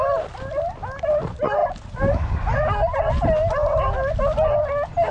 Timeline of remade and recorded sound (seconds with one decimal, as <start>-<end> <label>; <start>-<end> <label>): 0.0-5.1 recorded